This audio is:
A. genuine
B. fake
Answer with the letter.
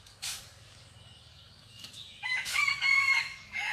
B